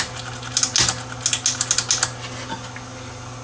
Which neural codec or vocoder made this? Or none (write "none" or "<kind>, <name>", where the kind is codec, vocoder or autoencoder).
none